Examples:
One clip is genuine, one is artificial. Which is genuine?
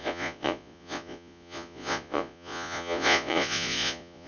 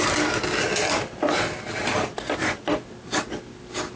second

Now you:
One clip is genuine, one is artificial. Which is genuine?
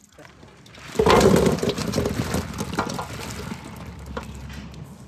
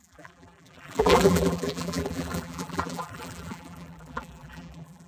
first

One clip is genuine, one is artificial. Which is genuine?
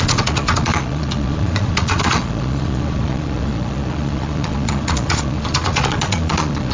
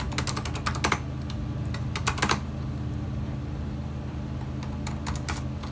second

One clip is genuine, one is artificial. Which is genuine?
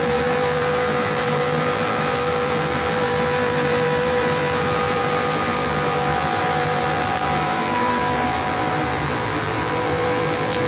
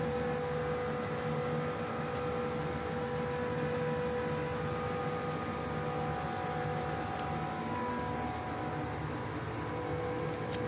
second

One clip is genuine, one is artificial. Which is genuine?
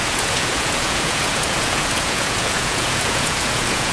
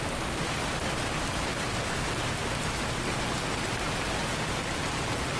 second